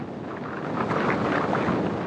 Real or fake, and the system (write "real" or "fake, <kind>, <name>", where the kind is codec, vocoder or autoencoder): real